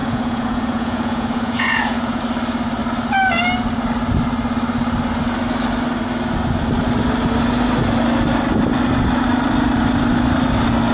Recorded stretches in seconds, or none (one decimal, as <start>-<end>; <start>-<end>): 2.2-10.9